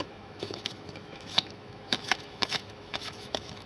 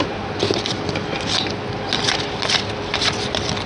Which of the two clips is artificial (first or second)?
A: first